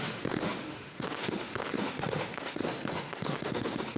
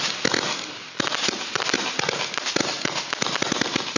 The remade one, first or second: first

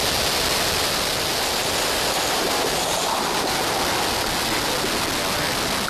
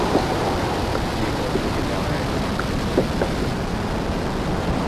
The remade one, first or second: second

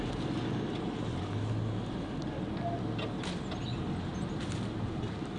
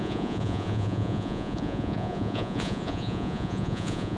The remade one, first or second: second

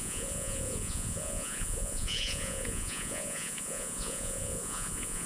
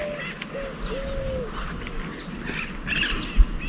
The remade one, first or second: first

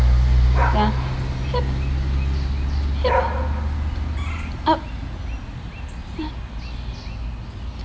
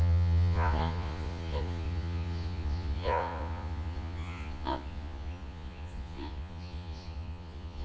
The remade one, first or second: second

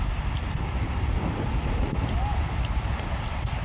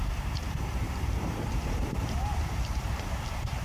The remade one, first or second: second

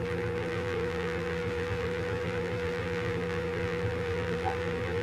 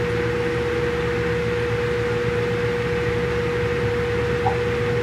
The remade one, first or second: first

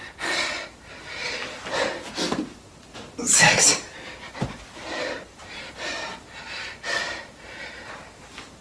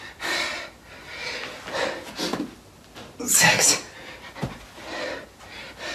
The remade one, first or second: first